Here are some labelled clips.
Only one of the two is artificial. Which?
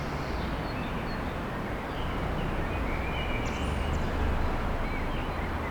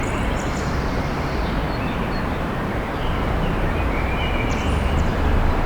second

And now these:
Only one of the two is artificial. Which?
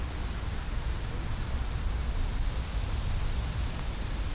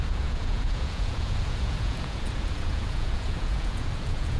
second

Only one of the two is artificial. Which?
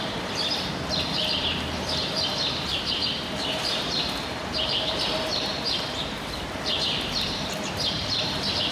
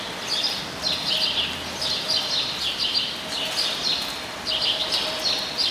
first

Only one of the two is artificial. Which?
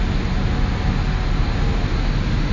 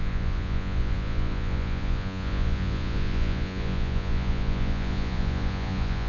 second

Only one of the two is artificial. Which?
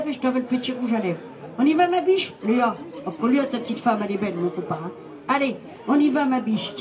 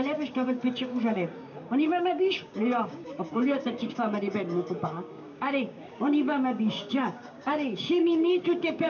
second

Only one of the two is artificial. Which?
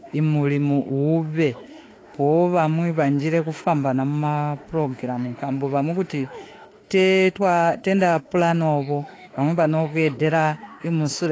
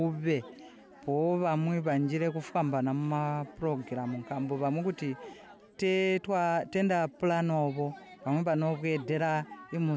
first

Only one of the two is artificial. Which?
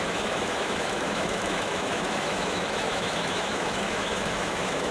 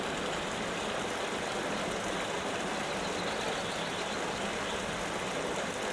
first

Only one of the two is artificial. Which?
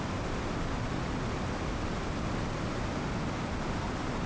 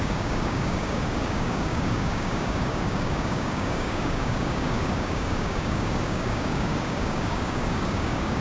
second